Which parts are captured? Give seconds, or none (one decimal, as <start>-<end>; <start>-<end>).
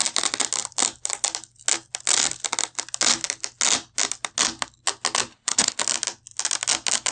0.0-5.3; 5.8-7.1